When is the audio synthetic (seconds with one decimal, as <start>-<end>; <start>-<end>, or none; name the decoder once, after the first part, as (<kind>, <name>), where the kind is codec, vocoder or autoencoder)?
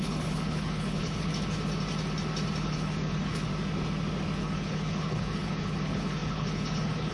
0.0-1.3 (codec, HILCodec); 2.6-3.5; 4.4-7.1